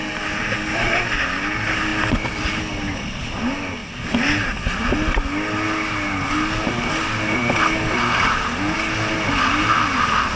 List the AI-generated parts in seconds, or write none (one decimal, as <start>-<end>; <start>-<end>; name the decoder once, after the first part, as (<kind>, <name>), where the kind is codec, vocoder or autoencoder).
none